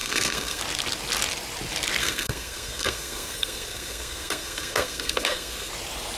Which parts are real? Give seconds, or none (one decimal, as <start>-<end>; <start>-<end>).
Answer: 0.6-2.0; 5.7-6.2